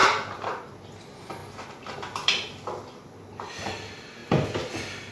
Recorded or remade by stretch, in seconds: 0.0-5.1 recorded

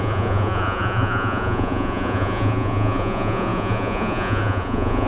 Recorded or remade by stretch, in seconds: 0.0-5.1 remade